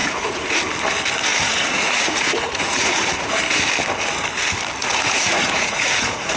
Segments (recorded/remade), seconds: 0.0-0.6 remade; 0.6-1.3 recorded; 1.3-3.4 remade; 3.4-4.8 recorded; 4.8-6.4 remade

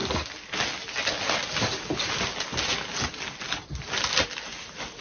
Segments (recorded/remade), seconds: 0.0-5.0 recorded